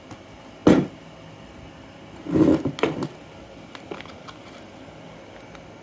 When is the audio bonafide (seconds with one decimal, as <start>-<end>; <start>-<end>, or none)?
0.0-5.8

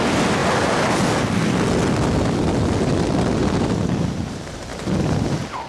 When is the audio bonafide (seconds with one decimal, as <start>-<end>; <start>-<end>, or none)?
0.0-5.7